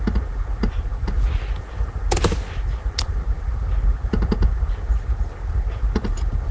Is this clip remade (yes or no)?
no